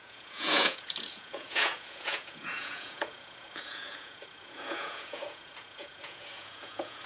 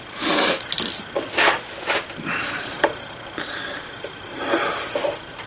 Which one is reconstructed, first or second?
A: first